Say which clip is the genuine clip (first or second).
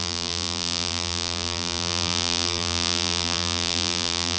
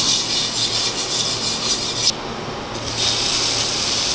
second